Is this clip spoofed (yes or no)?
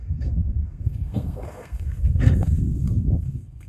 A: yes